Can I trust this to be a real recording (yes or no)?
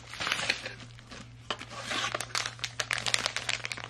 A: yes